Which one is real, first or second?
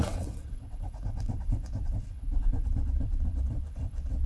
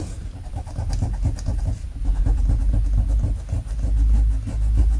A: second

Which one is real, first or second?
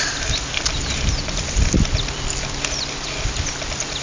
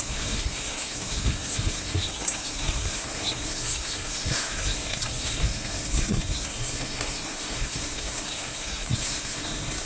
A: first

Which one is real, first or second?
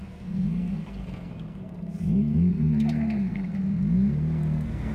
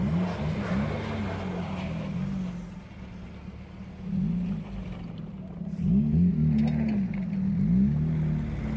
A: second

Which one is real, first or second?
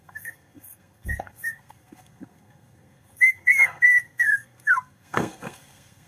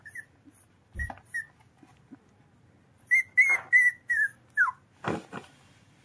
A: second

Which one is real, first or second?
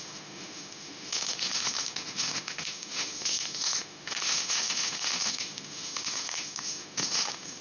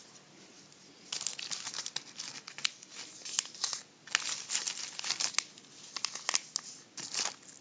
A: second